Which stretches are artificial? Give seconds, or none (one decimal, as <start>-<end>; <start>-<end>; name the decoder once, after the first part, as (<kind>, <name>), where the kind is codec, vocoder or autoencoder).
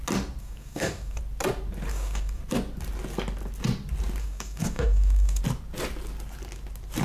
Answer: 0.4-1.2 (codec, DAC); 1.9-2.4; 4.2-5.4